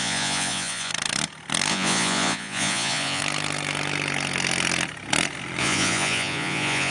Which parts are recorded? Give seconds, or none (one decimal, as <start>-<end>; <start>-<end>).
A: 0.9-1.7; 3.2-5.6